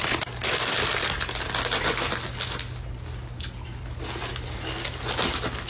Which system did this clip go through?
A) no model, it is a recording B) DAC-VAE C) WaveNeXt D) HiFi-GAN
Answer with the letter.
A